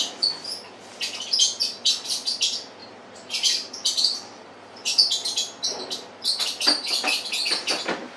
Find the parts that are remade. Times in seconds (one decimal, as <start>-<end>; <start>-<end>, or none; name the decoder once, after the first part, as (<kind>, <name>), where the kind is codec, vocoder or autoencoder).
2.8-3.7 (vocoder, BigVGAN v2)